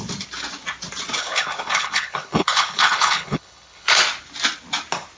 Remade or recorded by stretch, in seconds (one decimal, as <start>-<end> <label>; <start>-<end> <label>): 0.0-1.2 recorded; 1.2-4.0 remade; 4.0-5.2 recorded